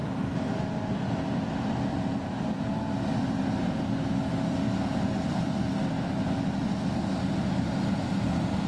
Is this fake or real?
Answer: real